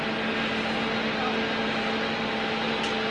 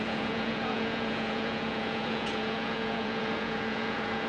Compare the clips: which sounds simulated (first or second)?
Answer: second